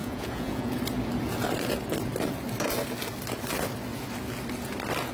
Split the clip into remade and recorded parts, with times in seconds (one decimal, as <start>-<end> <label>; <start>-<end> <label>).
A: 0.0-0.8 remade; 0.8-5.1 recorded